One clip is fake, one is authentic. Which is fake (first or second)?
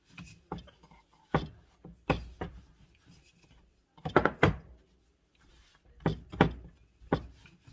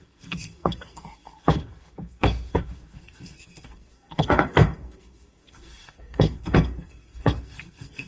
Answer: second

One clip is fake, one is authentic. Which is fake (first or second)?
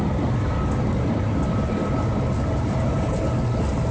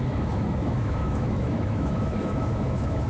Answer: second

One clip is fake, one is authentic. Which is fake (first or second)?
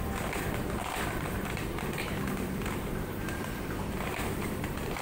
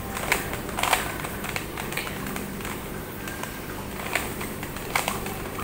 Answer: first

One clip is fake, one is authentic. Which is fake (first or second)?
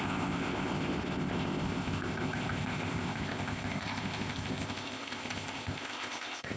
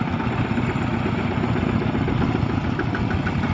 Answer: first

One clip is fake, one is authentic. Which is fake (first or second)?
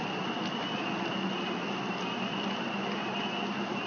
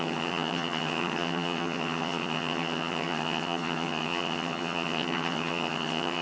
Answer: second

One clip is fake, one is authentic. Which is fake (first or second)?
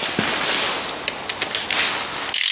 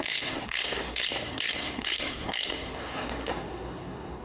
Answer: second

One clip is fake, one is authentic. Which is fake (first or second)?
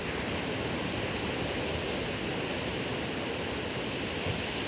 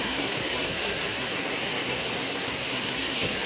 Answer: second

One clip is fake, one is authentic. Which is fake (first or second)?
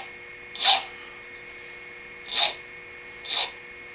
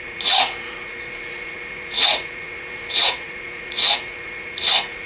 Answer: second